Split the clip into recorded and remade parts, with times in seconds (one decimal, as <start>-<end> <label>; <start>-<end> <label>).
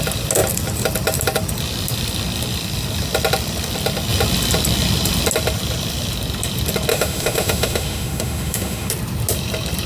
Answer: 0.0-6.9 recorded; 6.9-8.9 remade; 8.9-9.9 recorded